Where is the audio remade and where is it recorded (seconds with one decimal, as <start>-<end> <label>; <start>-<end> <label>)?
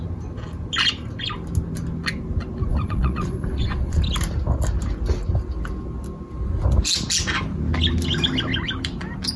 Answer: 0.0-2.7 recorded; 2.7-4.0 remade; 4.0-9.4 recorded